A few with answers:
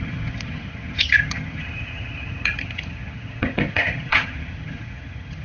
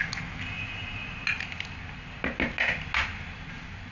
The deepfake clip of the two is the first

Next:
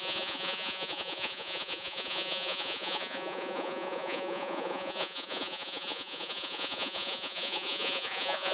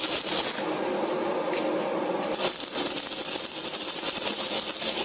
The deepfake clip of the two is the first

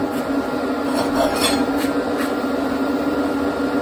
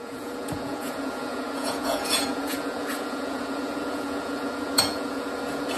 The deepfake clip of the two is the second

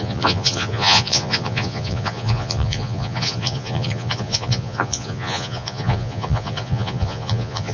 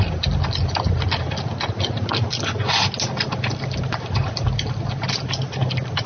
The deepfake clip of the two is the first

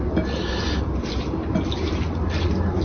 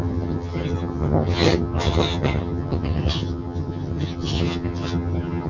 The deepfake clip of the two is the second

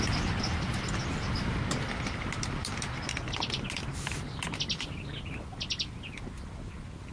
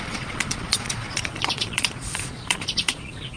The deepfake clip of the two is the second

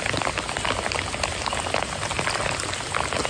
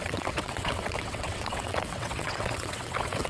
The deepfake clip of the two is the second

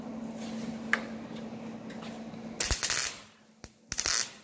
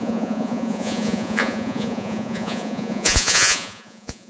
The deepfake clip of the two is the second